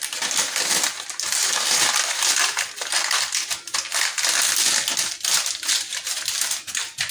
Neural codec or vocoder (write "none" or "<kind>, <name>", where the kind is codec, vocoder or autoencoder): none